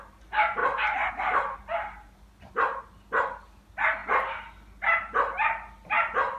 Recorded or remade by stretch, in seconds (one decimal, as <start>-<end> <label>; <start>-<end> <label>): 0.0-6.4 recorded